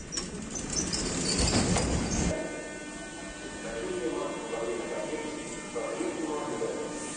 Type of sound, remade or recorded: recorded